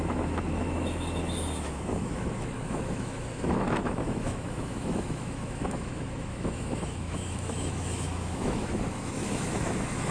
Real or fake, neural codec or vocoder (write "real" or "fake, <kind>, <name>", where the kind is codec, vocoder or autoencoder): fake, autoencoder, DAC-VAE